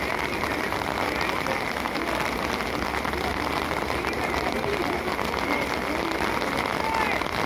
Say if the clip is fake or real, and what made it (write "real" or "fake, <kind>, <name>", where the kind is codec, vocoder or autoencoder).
real